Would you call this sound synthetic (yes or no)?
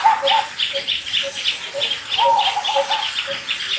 yes